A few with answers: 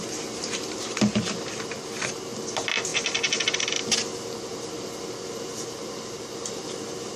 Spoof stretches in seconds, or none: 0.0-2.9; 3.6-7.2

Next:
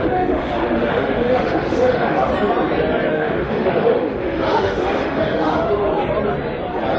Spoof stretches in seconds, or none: 0.0-2.3; 3.1-5.9

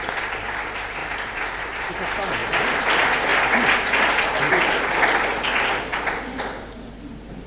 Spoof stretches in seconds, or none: 1.0-1.9; 2.4-2.9

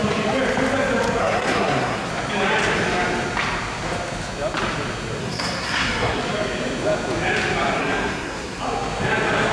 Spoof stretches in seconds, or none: 1.2-2.1; 5.2-6.2; 7.8-8.6